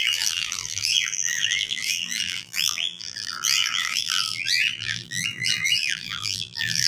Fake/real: fake